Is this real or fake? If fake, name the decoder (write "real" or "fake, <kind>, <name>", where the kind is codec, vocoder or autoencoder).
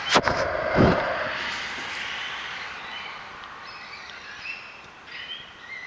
fake, vocoder, BigVGAN v2